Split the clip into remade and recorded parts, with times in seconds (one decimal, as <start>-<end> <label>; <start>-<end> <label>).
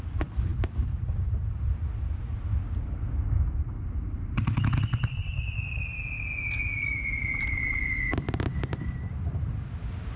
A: 0.0-10.2 recorded